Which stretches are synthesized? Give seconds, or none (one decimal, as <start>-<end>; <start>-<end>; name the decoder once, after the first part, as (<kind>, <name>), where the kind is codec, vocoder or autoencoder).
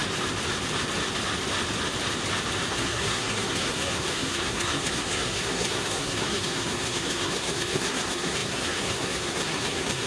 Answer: 2.7-10.1 (codec, SNAC)